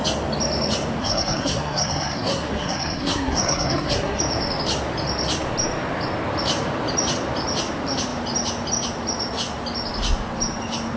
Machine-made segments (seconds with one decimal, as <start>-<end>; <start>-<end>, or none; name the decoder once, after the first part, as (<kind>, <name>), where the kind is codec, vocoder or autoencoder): 1.0-4.2 (codec, SNAC)